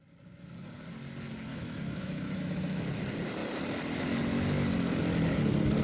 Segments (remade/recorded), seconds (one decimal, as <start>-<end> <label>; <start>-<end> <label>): 0.0-1.5 recorded; 1.5-2.8 remade; 2.8-5.8 recorded